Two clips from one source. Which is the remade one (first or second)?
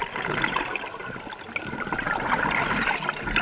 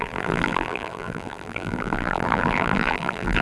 second